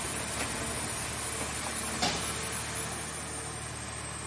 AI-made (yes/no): no